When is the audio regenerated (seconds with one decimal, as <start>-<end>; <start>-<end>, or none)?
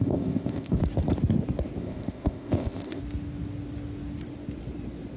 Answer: 0.0-0.8; 1.8-3.0